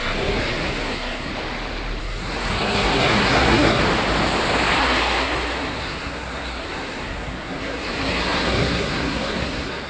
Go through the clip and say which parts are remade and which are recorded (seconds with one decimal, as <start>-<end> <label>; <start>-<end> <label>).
0.0-1.3 remade; 1.3-2.0 recorded; 2.0-3.8 remade; 3.8-4.8 recorded; 4.8-9.9 remade